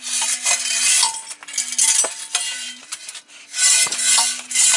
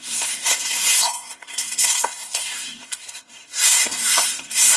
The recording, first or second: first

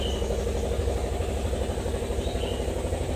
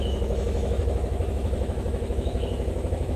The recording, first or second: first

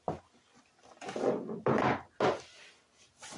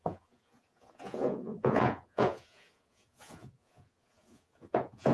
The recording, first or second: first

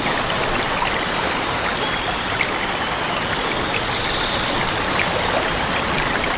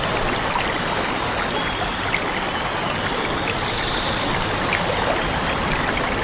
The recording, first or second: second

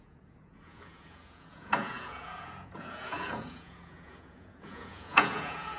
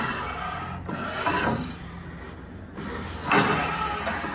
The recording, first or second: second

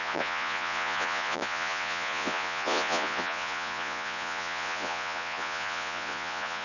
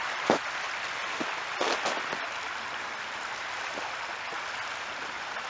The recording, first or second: second